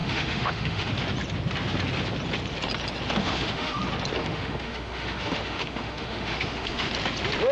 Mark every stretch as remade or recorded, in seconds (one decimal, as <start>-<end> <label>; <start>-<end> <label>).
0.0-0.9 remade; 0.9-3.2 recorded; 3.2-3.8 remade; 3.8-4.2 recorded; 4.2-6.9 remade; 6.9-7.5 recorded